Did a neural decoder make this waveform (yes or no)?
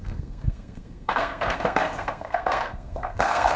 yes